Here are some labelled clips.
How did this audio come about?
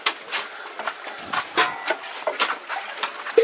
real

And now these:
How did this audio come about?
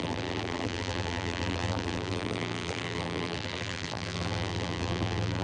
fake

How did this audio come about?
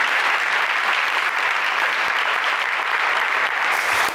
fake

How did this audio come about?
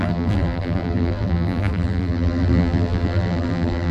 fake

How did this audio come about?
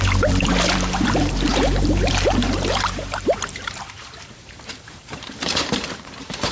fake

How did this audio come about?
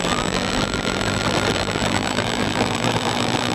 fake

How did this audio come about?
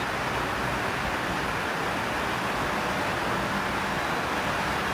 real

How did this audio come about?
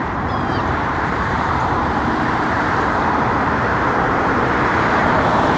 fake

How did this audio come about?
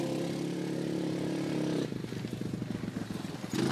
real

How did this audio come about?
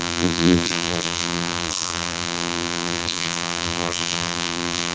fake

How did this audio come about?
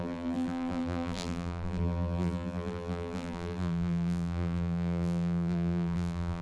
fake